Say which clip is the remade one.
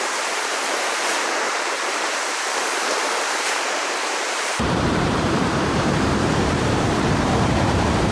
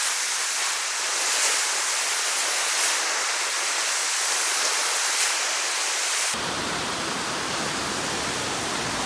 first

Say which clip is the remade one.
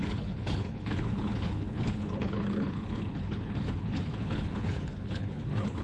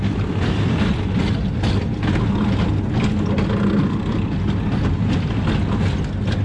first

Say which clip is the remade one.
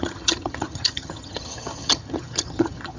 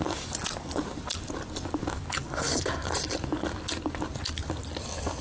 first